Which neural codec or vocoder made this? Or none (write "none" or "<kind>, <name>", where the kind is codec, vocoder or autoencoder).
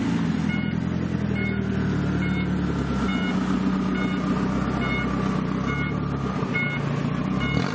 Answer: none